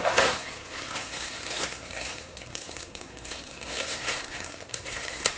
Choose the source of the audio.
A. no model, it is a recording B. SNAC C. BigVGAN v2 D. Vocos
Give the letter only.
B